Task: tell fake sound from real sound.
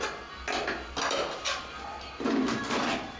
real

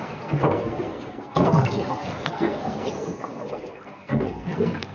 fake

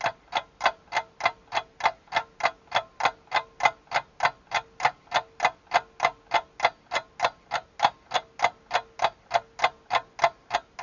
real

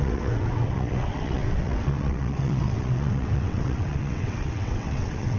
fake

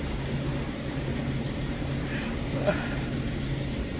real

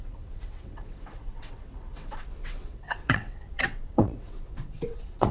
fake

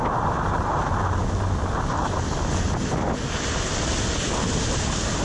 real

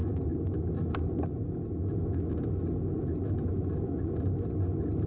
real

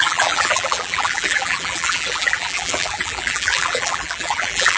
fake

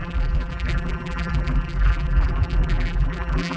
fake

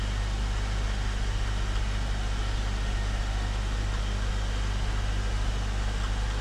real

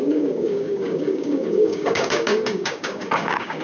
fake